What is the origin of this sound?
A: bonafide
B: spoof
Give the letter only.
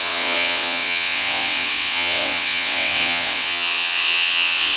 B